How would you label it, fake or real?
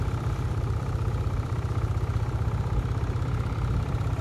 fake